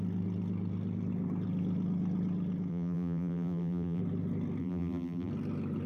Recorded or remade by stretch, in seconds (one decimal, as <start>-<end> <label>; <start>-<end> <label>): 0.0-2.7 recorded; 2.7-4.0 remade; 4.0-4.6 recorded; 4.6-5.3 remade; 5.3-5.9 recorded